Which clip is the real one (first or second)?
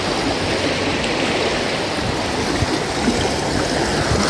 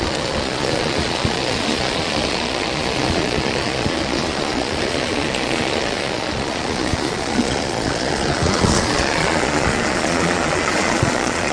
first